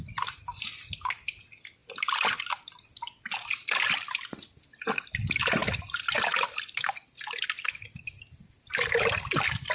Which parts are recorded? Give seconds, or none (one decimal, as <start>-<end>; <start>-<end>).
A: 0.0-9.7